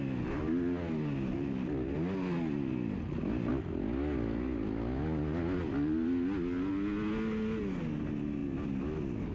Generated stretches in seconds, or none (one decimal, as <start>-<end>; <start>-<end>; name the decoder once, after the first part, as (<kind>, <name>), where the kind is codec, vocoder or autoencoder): none